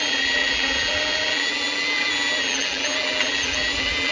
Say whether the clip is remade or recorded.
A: remade